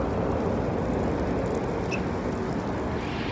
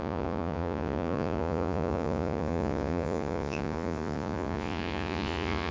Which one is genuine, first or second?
first